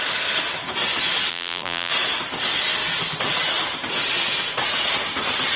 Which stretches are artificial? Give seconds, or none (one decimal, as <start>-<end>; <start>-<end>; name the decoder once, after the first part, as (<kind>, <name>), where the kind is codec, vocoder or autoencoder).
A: 1.3-1.9 (vocoder, BigVGAN v2)